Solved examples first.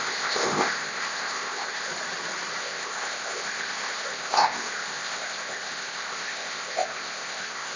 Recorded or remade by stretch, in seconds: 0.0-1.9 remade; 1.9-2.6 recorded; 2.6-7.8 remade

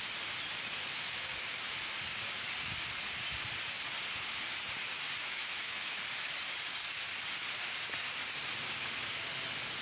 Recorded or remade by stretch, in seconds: 0.0-5.2 recorded; 5.2-6.0 remade; 6.0-9.8 recorded

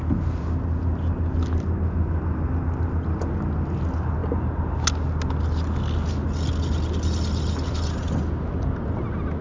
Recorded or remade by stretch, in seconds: 0.0-9.4 recorded

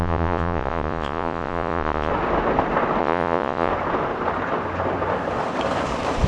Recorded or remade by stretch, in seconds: 0.0-2.1 remade; 2.1-3.0 recorded; 3.0-3.7 remade; 3.7-6.3 recorded

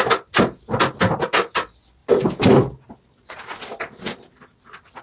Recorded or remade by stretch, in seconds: 0.0-5.0 recorded

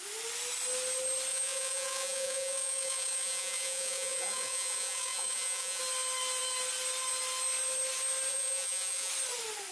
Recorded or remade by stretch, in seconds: 0.0-1.3 recorded; 1.3-5.8 remade; 5.8-8.3 recorded; 8.3-9.1 remade; 9.1-9.7 recorded

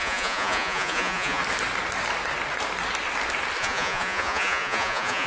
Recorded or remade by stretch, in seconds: 0.0-1.4 remade; 1.4-3.6 recorded; 3.6-5.3 remade

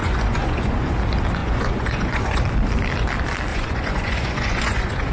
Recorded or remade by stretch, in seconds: 0.0-0.9 remade; 0.9-1.4 recorded; 1.4-2.4 remade; 2.4-3.5 recorded; 3.5-5.1 remade